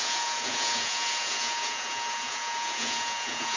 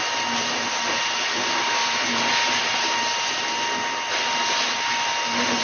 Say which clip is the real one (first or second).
second